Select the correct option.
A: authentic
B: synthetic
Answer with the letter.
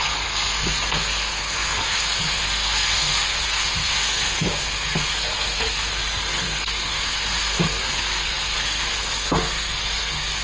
B